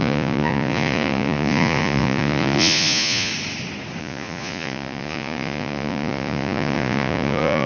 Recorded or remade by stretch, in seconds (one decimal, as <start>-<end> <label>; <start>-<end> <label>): 0.0-3.3 remade; 3.3-4.0 recorded; 4.0-7.7 remade